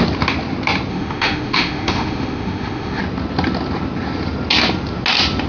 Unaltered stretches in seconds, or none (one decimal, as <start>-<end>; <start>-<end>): 0.0-0.9; 3.0-5.5